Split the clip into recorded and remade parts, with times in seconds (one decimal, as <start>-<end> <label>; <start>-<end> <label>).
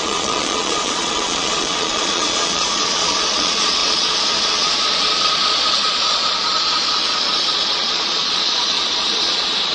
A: 0.0-9.7 remade